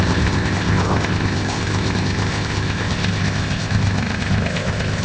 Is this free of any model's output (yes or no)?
no